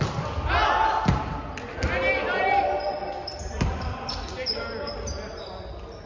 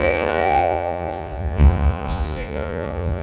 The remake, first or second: second